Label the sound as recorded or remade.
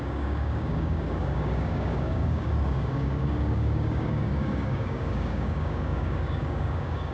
remade